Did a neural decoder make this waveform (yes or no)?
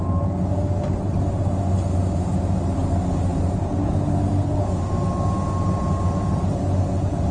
no